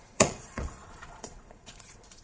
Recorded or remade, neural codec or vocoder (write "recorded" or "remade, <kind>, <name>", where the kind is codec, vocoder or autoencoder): remade, vocoder, Vocos